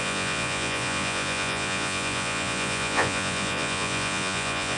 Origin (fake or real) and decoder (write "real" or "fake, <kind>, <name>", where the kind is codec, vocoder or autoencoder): fake, vocoder, Vocos